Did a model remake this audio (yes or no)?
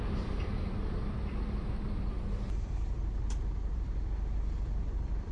yes